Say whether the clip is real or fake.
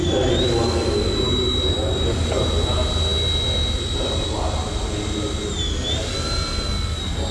real